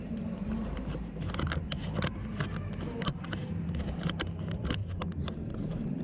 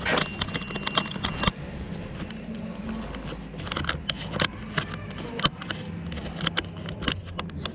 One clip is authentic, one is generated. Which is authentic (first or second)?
second